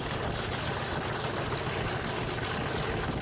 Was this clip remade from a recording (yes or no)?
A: no